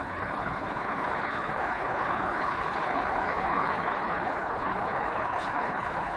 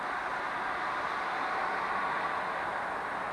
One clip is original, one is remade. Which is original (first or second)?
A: second